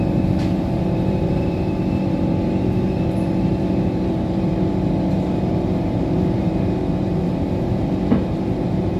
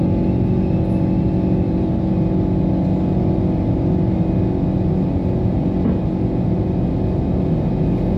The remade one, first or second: first